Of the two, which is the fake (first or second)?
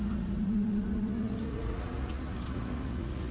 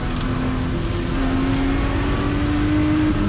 first